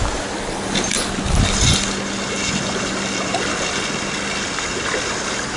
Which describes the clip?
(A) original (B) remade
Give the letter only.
A